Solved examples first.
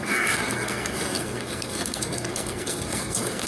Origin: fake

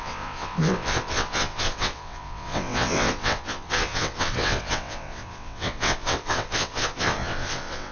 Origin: fake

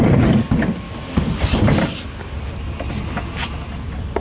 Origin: real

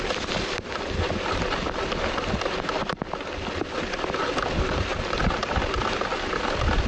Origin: real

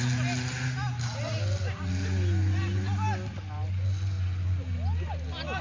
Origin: real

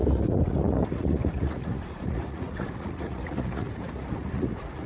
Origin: fake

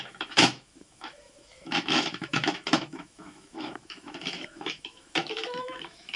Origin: fake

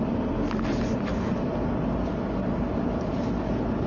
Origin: real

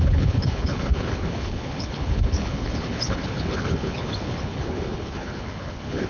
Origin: fake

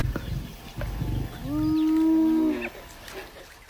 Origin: real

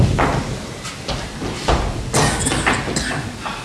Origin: real